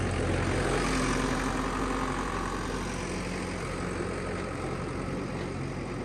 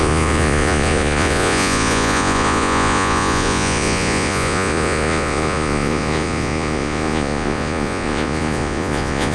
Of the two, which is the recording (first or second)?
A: first